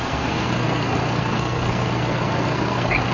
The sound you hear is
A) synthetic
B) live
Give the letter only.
A